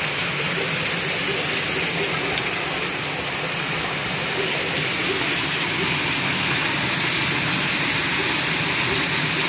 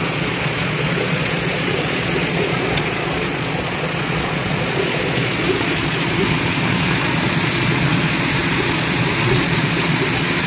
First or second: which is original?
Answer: first